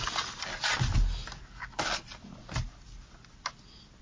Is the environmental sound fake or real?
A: real